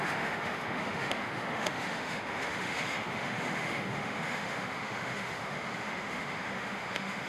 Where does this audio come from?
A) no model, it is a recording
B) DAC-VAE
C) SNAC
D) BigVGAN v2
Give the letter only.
B